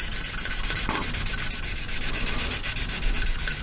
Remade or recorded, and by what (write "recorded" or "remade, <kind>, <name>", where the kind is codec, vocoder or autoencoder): recorded